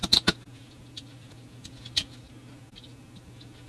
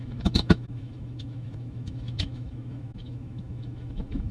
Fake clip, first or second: second